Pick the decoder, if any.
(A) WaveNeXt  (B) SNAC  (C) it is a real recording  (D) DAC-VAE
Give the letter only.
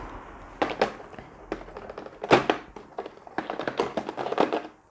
C